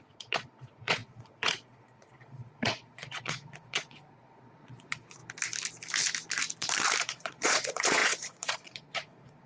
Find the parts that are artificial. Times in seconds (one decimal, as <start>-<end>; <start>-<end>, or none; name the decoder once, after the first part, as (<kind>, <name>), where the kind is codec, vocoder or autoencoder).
0.0-5.2 (vocoder, Vocos); 7.0-9.5